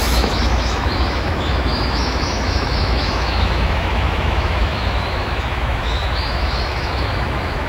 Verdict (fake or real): fake